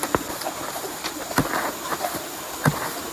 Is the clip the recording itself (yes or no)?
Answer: yes